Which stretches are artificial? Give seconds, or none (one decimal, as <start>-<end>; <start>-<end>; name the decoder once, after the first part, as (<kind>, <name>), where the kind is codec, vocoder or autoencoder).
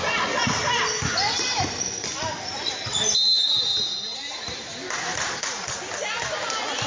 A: 4.1-4.8 (vocoder, BigVGAN v2)